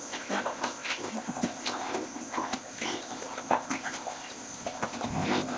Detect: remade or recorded remade